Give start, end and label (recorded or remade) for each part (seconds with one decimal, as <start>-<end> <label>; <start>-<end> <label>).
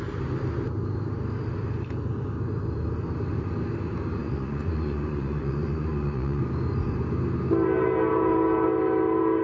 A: 0.0-4.2 recorded; 4.2-6.4 remade; 6.4-9.4 recorded